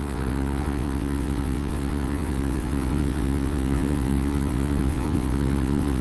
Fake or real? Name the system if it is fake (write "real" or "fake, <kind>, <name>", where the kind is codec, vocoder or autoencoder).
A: fake, vocoder, WaveNeXt